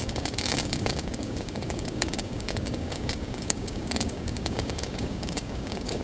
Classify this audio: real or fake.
fake